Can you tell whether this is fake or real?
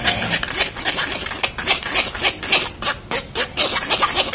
real